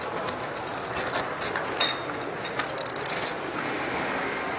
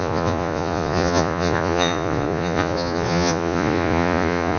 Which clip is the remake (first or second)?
second